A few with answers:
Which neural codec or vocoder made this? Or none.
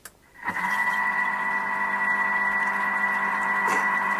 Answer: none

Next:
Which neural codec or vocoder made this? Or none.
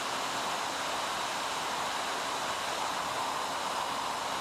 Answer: none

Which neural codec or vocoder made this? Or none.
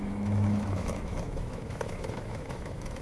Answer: autoencoder, DAC-VAE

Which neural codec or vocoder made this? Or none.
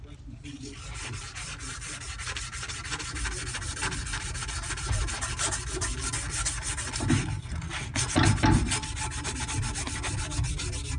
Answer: none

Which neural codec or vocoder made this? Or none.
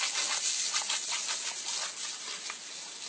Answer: none